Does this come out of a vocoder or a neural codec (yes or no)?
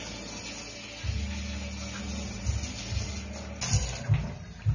no